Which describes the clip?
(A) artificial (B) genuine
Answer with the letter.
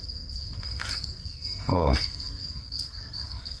A